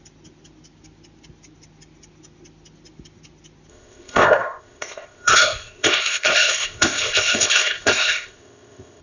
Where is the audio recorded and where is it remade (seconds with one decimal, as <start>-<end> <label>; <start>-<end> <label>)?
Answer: 0.0-3.7 recorded; 3.7-9.0 remade